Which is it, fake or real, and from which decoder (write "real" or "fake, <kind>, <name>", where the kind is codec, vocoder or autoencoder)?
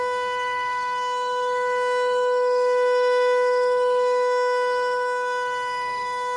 fake, autoencoder, DAC-VAE